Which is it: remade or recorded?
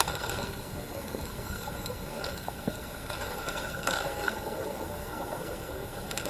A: remade